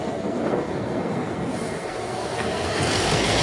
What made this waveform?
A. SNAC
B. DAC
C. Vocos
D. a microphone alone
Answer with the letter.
A